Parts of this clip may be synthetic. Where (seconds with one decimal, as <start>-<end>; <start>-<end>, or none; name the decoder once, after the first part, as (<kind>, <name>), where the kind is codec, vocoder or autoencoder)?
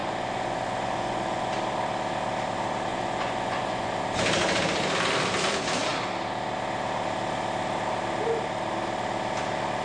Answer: 0.0-1.5 (vocoder, Vocos); 2.9-3.9